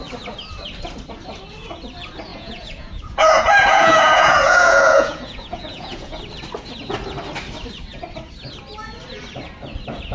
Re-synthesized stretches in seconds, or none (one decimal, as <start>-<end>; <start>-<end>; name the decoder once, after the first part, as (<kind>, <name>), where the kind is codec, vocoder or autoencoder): 2.3-6.2 (vocoder, Vocos)